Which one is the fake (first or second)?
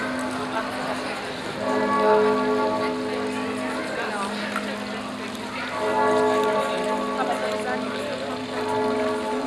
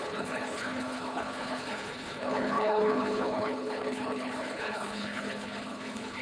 second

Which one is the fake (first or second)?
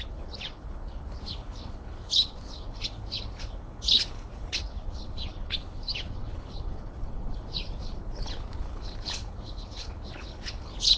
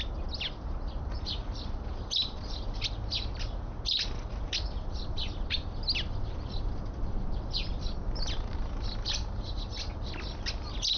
first